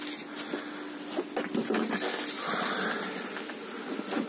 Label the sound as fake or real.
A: real